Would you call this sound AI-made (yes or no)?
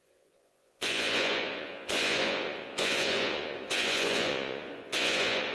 yes